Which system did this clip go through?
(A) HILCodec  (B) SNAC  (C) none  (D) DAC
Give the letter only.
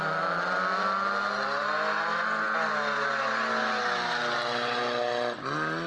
C